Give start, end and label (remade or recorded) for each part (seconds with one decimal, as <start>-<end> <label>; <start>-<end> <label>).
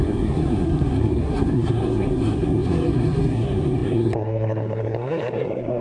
0.0-5.8 remade